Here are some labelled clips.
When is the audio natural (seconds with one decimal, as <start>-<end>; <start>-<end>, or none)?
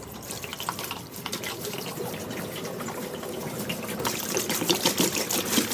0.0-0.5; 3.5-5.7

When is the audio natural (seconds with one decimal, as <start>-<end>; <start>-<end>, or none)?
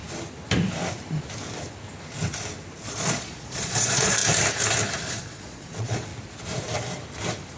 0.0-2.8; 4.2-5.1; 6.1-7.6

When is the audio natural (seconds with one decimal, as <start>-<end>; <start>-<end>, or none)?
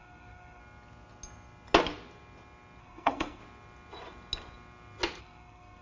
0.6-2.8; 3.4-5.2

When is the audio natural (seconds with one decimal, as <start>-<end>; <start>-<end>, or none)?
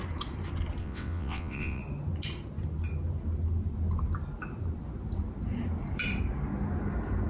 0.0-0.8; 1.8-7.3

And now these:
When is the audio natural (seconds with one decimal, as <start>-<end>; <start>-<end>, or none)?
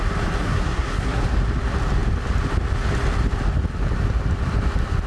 0.0-0.4; 1.2-5.1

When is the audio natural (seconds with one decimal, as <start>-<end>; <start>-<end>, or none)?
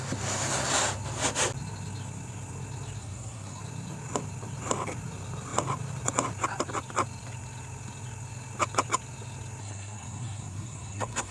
0.0-3.0; 3.6-9.6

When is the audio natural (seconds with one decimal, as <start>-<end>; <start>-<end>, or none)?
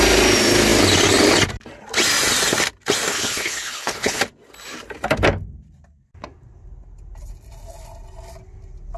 0.0-3.1; 4.2-9.0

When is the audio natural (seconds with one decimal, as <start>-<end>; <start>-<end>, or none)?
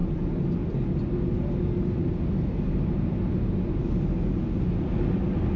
0.0-5.6